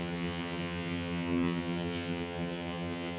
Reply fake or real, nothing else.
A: fake